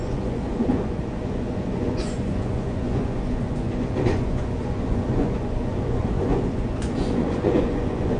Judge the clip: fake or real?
fake